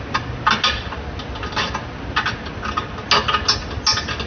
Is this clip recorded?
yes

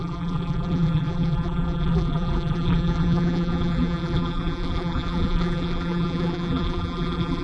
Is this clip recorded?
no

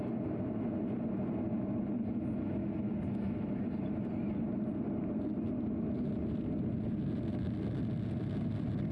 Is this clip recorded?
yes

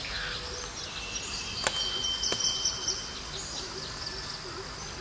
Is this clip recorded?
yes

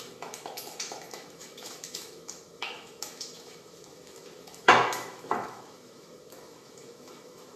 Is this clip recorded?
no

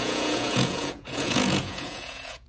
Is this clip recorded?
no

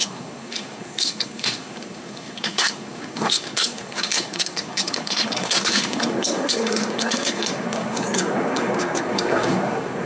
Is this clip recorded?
no